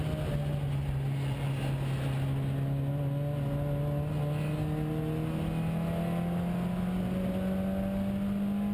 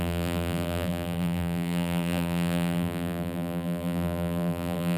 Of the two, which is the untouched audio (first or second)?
first